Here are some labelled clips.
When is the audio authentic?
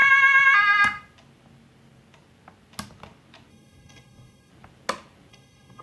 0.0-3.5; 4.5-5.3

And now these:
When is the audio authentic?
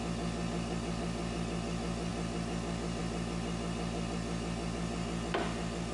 0.0-5.9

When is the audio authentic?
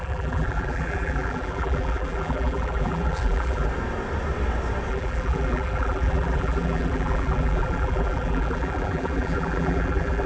3.7-4.9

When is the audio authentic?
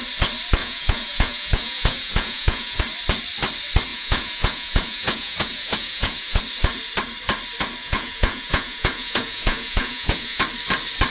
0.0-0.6; 2.8-3.9; 6.4-7.8; 10.4-11.1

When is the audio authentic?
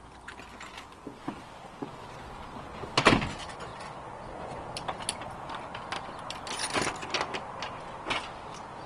0.0-3.7; 4.6-8.9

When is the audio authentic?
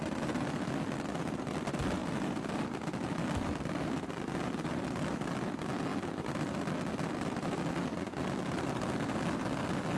0.0-2.0; 4.7-10.0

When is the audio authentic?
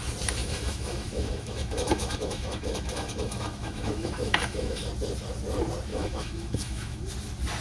0.0-0.4; 4.9-5.9; 7.1-7.6